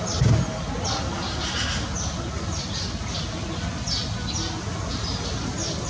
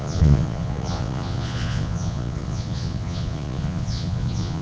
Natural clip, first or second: first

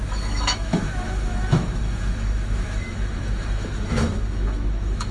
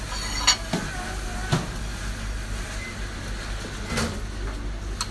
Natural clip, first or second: second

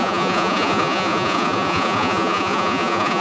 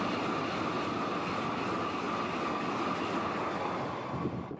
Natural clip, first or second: second